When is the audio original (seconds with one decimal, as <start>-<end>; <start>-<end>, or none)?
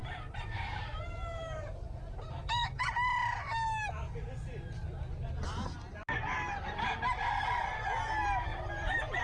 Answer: 2.1-8.5